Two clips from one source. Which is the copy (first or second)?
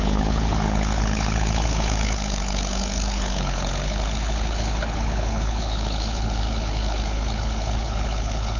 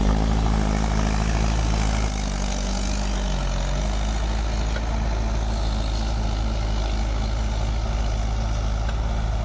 first